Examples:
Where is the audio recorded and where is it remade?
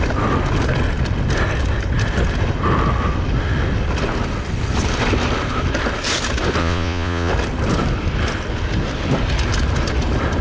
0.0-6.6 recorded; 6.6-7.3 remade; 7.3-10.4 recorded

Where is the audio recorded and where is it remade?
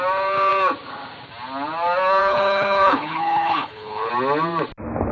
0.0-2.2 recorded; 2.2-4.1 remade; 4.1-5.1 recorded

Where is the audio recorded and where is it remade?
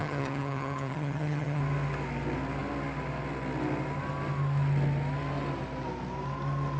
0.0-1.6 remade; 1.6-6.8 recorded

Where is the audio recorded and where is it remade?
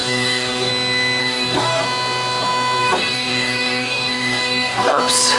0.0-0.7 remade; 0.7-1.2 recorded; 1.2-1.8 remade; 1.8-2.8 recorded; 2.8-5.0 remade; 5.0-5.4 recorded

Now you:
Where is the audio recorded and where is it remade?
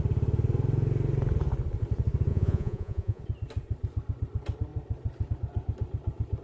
0.0-2.3 recorded; 2.3-3.2 remade; 3.2-6.4 recorded